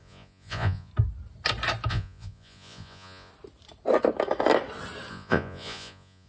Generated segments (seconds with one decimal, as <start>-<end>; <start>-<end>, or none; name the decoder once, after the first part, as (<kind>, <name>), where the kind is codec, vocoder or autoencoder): 0.0-0.9 (vocoder, Vocos); 1.9-3.3; 5.1-6.3